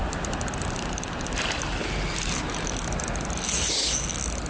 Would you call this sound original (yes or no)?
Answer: yes